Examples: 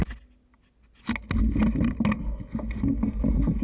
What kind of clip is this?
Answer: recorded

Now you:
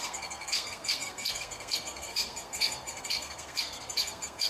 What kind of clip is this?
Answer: remade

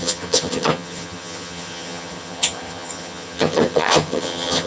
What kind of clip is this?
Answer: remade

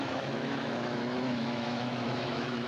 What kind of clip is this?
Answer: remade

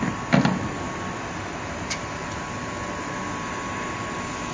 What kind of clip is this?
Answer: recorded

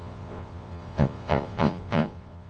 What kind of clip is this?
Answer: remade